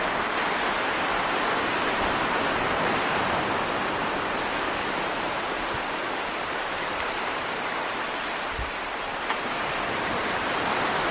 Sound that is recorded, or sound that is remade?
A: remade